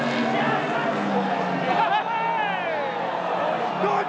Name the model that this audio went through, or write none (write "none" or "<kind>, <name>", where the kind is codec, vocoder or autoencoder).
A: none